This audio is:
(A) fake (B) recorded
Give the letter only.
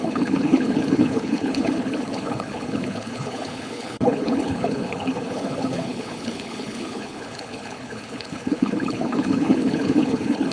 A